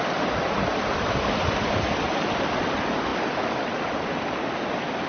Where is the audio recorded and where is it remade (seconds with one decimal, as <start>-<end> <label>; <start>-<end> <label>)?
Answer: 0.0-5.1 recorded